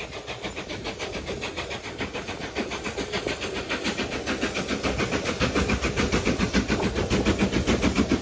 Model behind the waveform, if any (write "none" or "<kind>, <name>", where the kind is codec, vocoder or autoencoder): none